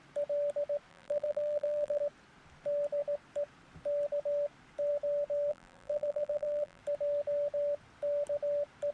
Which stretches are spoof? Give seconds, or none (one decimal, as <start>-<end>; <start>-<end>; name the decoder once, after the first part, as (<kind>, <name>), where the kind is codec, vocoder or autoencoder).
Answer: 0.9-2.0 (vocoder, BigVGAN v2); 5.5-6.8